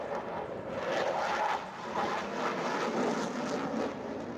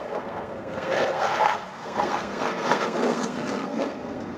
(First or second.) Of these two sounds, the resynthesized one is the second